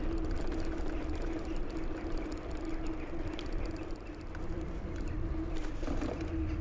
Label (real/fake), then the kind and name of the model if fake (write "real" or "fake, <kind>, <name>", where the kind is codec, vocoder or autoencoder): real